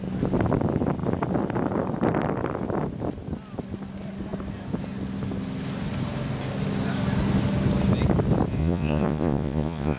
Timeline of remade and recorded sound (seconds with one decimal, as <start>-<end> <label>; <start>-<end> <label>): 0.0-8.6 recorded; 8.6-10.0 remade